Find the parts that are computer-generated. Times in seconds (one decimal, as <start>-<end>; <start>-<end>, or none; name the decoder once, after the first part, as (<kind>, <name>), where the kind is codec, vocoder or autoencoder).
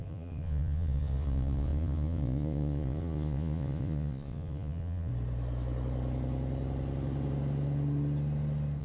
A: 0.0-5.1 (vocoder, Vocos)